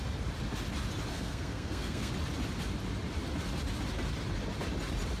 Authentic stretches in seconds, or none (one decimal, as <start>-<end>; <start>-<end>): 0.0-1.1; 2.1-5.2